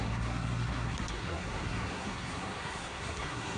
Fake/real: fake